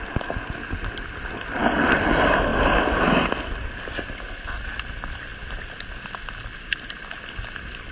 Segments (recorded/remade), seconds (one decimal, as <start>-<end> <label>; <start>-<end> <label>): 0.0-1.6 recorded; 1.6-2.1 remade; 2.1-2.5 recorded; 2.5-3.7 remade; 3.7-7.9 recorded